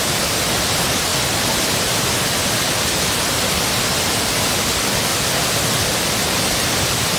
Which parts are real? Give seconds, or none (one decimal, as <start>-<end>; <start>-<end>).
0.0-7.2